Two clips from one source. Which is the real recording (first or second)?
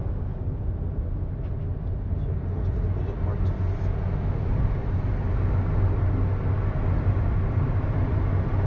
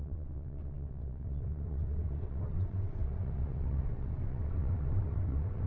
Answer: first